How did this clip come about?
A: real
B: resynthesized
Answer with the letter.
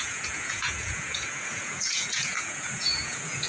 B